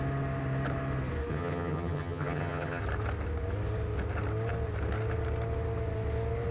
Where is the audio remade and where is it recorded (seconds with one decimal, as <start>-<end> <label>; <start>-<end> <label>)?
0.0-1.3 recorded; 1.3-2.8 remade; 2.8-6.5 recorded